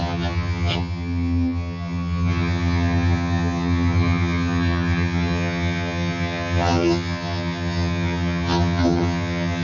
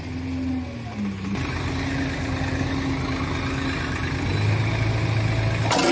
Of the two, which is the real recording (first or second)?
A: second